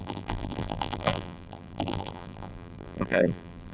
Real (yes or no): no